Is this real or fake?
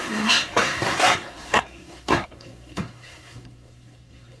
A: fake